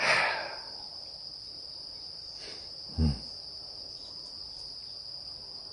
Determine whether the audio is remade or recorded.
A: recorded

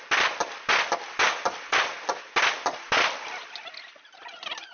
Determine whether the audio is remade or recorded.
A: recorded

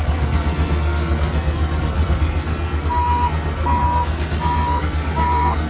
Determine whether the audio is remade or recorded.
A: remade